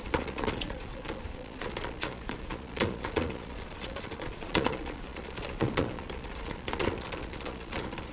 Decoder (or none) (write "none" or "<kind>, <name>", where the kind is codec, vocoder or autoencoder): vocoder, Vocos